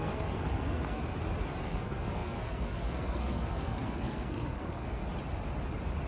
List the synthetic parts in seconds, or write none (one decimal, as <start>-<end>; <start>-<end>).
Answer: 0.0-1.0; 1.6-5.0

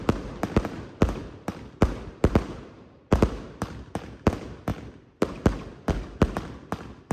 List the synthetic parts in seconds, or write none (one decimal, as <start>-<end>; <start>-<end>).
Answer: none

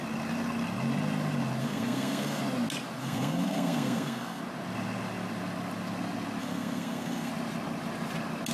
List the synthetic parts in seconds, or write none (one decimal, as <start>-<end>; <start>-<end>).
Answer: 1.6-2.4; 3.0-4.4; 6.4-7.3

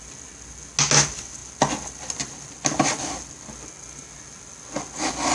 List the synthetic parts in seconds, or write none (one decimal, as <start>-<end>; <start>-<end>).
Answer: none

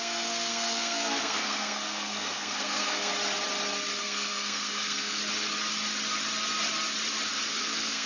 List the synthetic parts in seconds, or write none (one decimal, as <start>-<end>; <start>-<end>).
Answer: 0.0-3.1; 4.0-5.2; 7.6-8.1

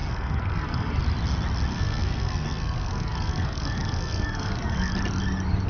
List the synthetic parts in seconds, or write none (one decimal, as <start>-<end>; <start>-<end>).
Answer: 0.0-1.0; 1.7-4.9

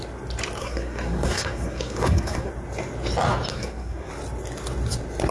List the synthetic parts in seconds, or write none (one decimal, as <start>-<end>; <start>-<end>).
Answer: 0.6-2.5; 3.5-4.1